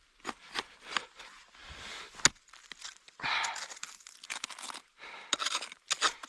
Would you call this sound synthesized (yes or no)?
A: no